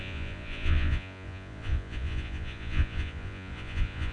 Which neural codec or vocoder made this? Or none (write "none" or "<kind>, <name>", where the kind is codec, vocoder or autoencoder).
vocoder, Vocos